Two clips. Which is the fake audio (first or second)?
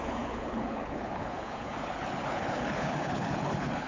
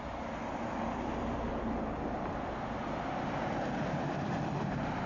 first